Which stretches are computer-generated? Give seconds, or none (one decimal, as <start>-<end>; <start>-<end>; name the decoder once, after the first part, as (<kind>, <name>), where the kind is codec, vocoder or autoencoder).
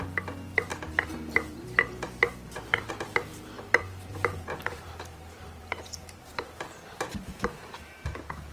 0.7-2.9 (vocoder, BigVGAN v2); 3.3-7.9